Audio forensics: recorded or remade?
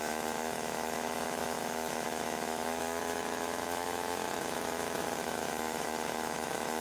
remade